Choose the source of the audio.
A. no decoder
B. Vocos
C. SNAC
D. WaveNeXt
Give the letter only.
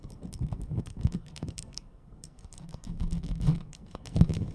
C